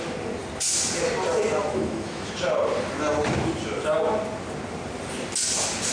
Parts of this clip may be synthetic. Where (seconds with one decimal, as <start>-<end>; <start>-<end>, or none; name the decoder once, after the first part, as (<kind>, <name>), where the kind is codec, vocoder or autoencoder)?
1.6-2.3 (autoencoder, DAC-VAE)